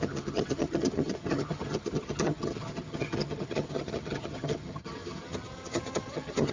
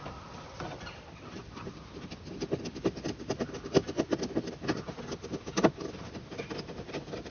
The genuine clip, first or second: second